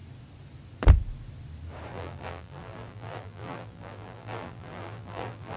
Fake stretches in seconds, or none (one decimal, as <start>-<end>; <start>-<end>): 1.9-5.6